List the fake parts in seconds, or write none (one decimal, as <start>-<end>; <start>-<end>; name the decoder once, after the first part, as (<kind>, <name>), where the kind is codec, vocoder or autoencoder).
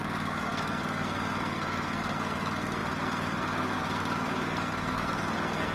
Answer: 0.0-5.7 (codec, SNAC)